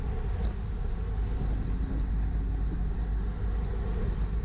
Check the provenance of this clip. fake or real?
real